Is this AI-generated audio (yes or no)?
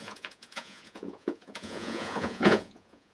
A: yes